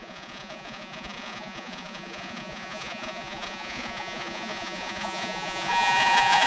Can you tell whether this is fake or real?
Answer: fake